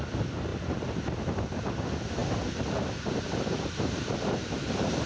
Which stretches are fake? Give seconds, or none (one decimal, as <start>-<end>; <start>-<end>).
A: 2.2-4.5